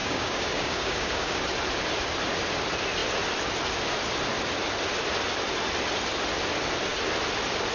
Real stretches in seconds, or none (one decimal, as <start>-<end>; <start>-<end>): 1.4-7.7